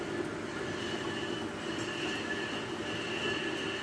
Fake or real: real